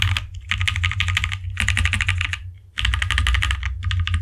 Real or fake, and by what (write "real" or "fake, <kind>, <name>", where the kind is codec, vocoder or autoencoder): real